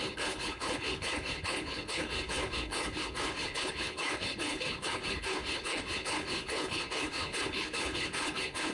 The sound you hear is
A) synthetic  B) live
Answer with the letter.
A